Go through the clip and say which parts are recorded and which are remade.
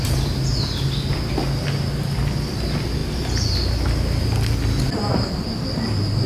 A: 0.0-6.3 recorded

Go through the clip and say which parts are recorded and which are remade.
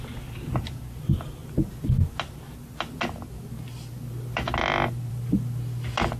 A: 0.0-6.2 recorded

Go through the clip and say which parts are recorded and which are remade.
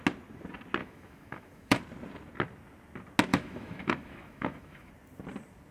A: 0.0-0.8 recorded; 0.8-1.8 remade; 1.8-3.3 recorded; 3.3-4.9 remade; 4.9-5.7 recorded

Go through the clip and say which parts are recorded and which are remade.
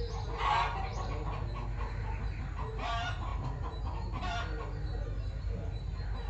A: 0.0-6.3 recorded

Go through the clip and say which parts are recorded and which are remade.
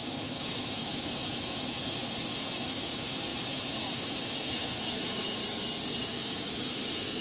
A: 0.0-5.4 remade; 5.4-6.0 recorded; 6.0-7.2 remade